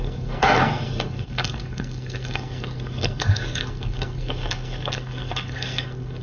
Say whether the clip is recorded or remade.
remade